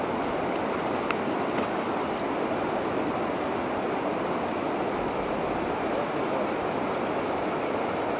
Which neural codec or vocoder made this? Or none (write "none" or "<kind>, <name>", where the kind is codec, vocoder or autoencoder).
none